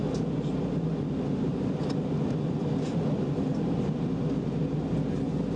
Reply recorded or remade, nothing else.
recorded